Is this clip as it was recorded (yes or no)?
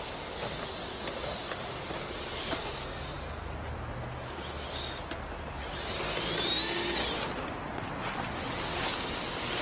yes